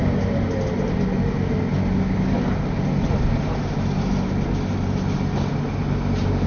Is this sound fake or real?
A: real